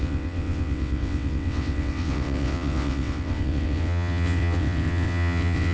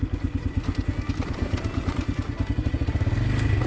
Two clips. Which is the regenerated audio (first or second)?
first